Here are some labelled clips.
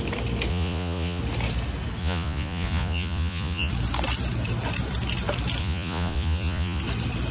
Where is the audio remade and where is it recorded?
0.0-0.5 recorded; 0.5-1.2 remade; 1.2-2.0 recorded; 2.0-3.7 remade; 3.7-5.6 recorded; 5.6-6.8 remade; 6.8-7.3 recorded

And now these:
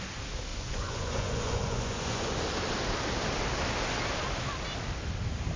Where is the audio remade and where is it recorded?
0.0-0.5 recorded; 0.5-2.3 remade; 2.3-5.6 recorded

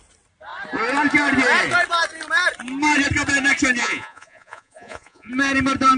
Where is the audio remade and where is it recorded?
0.0-3.8 recorded; 3.8-5.3 remade; 5.3-6.0 recorded

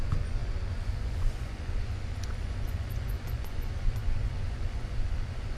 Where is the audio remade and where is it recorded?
0.0-5.6 remade

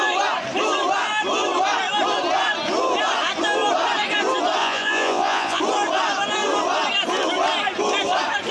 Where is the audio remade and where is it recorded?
0.0-4.6 recorded; 4.6-5.6 remade; 5.6-8.5 recorded

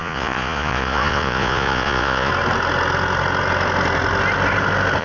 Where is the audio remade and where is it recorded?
0.0-2.3 remade; 2.3-5.0 recorded